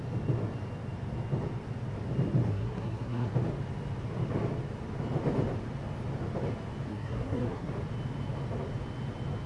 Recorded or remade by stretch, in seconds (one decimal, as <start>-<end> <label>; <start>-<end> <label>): 0.0-2.5 recorded; 2.5-3.3 remade; 3.3-6.9 recorded; 6.9-7.7 remade; 7.7-9.5 recorded